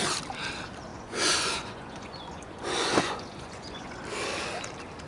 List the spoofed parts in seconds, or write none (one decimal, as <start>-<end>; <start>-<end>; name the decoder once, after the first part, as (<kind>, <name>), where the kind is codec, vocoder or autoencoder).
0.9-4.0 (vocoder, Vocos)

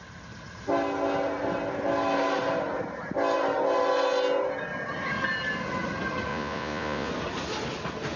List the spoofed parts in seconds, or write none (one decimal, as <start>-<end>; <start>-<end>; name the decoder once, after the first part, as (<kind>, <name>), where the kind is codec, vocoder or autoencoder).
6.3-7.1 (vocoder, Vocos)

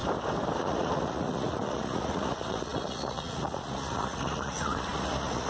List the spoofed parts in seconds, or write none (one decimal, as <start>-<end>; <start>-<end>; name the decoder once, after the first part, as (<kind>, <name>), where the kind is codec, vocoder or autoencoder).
0.6-5.5 (vocoder, Vocos)

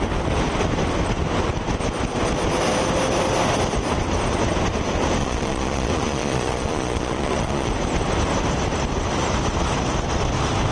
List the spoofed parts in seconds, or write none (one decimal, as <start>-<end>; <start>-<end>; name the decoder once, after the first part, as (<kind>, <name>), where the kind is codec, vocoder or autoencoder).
5.2-7.7 (vocoder, Vocos)

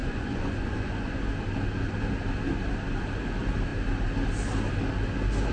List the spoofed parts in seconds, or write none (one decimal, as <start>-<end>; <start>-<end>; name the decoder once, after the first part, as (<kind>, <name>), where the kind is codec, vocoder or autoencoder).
0.0-1.2 (vocoder, Vocos)